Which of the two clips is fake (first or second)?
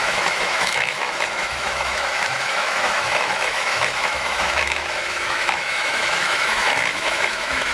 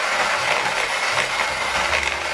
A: first